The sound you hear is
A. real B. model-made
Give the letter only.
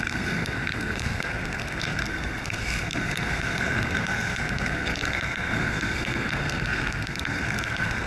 B